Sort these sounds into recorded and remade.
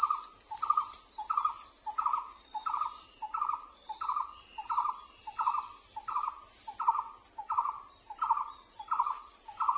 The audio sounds recorded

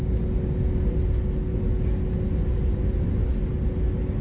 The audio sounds recorded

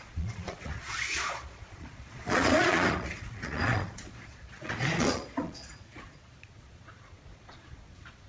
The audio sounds remade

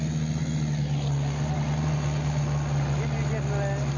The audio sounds recorded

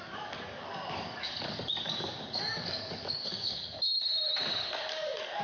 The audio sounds remade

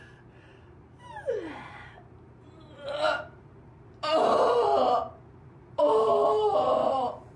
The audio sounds remade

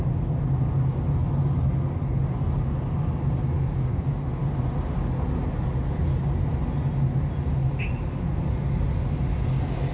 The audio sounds recorded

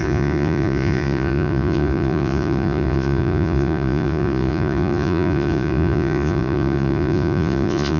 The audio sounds remade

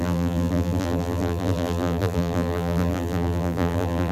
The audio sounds remade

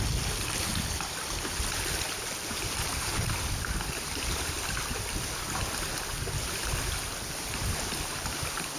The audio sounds recorded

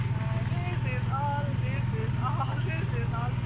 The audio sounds recorded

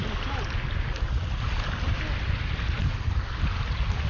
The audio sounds recorded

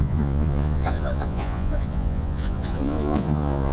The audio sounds remade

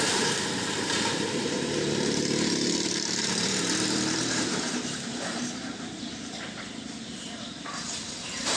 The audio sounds remade